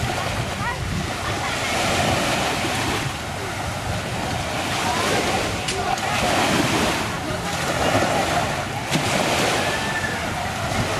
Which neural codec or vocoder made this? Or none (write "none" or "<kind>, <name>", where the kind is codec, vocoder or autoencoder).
none